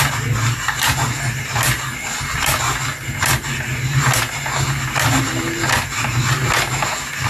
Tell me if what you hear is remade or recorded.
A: recorded